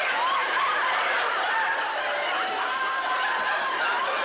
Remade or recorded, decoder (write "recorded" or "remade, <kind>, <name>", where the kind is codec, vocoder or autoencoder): remade, vocoder, BigVGAN v2